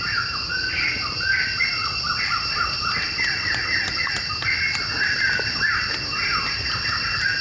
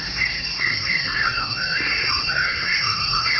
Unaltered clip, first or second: first